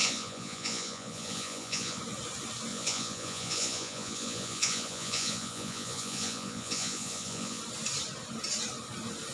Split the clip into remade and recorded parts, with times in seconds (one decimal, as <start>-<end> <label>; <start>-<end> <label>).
0.0-2.0 remade; 2.0-2.7 recorded; 2.7-7.6 remade; 7.6-9.3 recorded